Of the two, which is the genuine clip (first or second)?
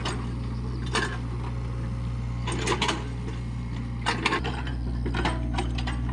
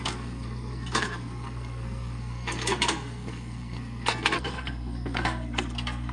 first